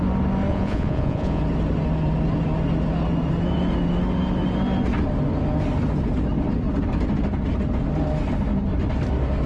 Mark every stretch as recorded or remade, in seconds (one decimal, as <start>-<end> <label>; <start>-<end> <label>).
0.0-0.5 recorded; 0.5-1.4 remade; 1.4-9.5 recorded